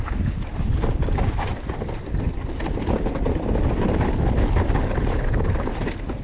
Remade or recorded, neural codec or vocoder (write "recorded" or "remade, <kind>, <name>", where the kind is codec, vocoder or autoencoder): remade, vocoder, BigVGAN v2